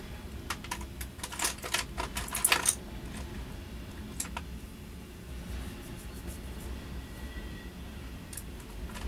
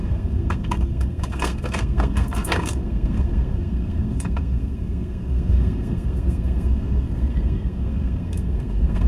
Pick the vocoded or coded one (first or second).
second